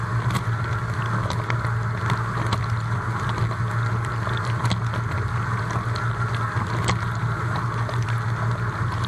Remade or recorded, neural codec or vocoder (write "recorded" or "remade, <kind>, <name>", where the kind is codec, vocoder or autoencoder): recorded